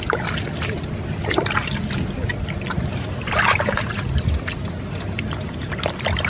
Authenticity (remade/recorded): recorded